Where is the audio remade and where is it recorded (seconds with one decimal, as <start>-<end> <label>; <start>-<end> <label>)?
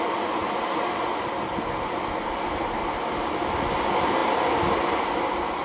0.0-5.6 recorded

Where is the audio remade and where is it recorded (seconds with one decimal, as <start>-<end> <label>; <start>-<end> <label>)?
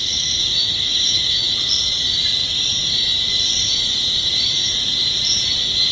0.0-0.4 recorded; 0.4-1.5 remade; 1.5-5.9 recorded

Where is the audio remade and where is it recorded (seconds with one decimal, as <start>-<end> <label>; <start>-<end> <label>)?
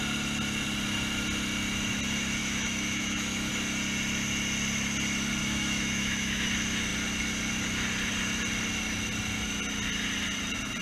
0.0-2.4 recorded; 2.4-3.5 remade; 3.5-5.4 recorded; 5.4-6.5 remade; 6.5-10.8 recorded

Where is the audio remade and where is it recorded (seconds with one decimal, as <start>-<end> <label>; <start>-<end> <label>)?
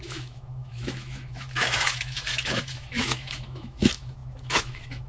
0.0-5.1 remade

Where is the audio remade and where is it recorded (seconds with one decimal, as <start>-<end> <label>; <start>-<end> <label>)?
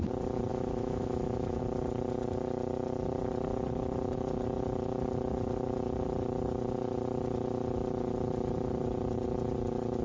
0.0-0.5 recorded; 0.5-1.6 remade; 1.6-10.0 recorded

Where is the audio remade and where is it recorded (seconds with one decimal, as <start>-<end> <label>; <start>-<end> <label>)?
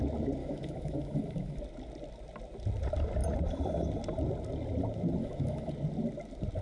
0.0-0.4 recorded; 0.4-1.6 remade; 1.6-5.2 recorded; 5.2-5.7 remade; 5.7-6.6 recorded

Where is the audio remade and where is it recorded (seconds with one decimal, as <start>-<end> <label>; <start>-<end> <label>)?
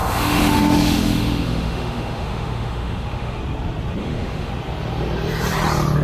0.0-3.4 remade; 3.4-4.0 recorded; 4.0-4.5 remade; 4.5-6.0 recorded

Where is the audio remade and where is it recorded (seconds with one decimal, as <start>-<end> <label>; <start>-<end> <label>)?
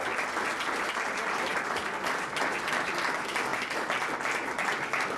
0.0-5.2 recorded